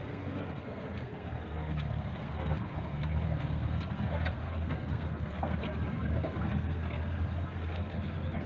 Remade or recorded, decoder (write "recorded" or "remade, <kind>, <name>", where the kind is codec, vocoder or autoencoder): remade, codec, SNAC